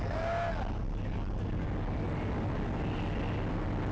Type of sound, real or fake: real